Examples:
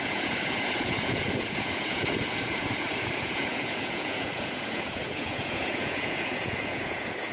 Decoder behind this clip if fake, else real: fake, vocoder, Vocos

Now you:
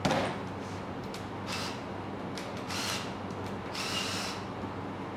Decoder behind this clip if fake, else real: real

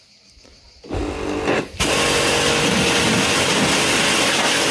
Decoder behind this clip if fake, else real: real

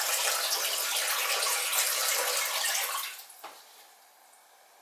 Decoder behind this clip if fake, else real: real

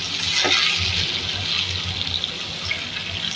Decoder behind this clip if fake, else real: real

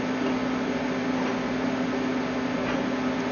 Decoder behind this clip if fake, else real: real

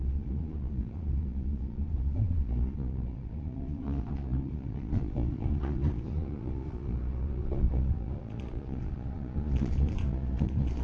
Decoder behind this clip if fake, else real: fake, vocoder, Vocos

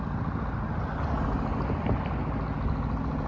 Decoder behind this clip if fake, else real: real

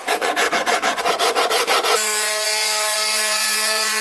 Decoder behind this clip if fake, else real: fake, vocoder, Vocos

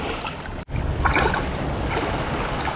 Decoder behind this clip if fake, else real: real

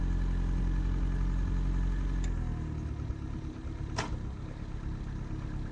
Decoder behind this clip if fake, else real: real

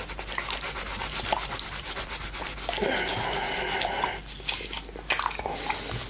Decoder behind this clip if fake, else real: real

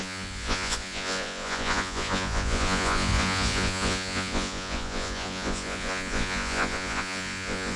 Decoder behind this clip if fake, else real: fake, vocoder, Vocos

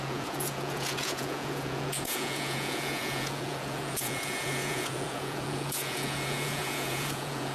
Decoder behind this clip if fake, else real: fake, vocoder, Vocos